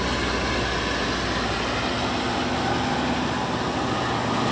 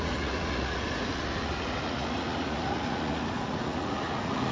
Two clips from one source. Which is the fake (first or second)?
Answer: second